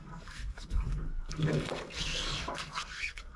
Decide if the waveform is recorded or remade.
remade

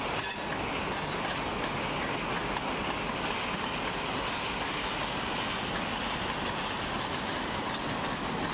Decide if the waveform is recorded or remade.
recorded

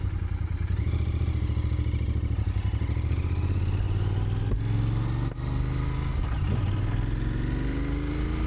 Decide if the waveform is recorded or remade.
recorded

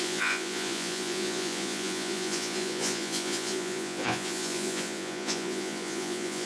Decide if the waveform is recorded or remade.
remade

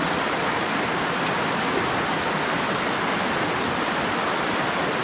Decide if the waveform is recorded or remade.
recorded